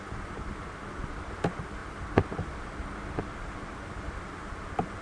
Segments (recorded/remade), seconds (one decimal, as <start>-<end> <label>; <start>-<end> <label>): 0.0-5.0 recorded